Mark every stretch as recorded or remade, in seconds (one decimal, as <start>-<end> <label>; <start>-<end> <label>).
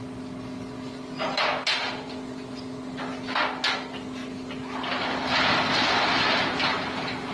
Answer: 0.0-7.3 recorded